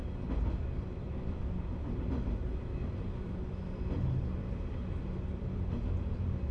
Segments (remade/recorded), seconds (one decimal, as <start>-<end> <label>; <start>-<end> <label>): 0.0-0.7 recorded; 0.7-4.8 remade; 4.8-6.5 recorded